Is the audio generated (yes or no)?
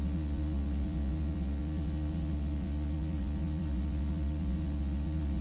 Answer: yes